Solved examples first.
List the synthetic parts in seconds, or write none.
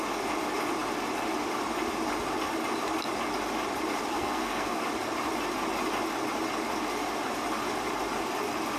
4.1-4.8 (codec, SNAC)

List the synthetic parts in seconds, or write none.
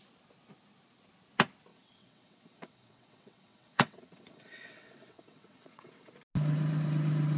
1.7-6.1 (vocoder, WaveNeXt)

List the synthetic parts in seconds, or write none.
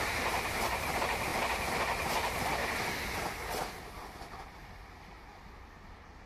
none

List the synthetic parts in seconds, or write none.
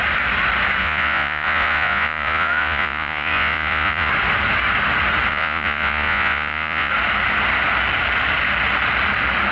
0.8-4.1 (vocoder, Vocos); 5.3-6.9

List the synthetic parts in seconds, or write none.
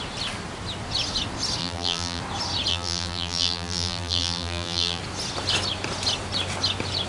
1.6-2.2 (vocoder, BigVGAN v2); 2.7-5.0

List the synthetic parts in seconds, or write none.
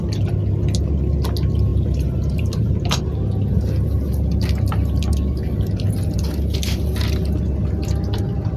1.7-3.0 (vocoder, BigVGAN v2)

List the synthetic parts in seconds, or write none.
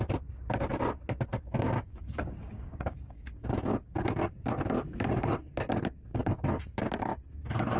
1.3-4.3 (codec, DAC); 6.1-6.8